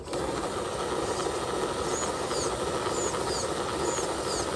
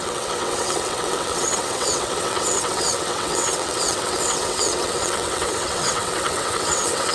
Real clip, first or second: first